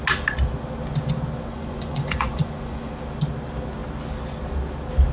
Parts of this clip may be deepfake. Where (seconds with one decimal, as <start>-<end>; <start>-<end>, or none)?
1.5-2.9

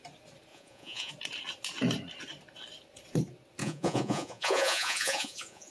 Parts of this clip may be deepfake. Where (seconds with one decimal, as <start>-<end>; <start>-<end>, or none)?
0.5-1.1; 3.6-5.7

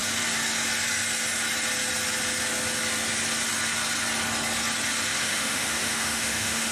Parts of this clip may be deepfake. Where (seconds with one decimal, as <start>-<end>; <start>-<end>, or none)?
5.1-6.7

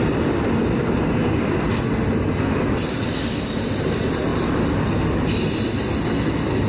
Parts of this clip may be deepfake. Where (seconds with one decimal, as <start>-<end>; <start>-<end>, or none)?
none